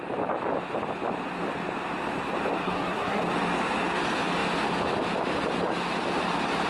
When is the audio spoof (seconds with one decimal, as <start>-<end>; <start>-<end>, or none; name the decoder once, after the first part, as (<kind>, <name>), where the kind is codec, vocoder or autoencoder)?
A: 2.6-3.2 (codec, SNAC)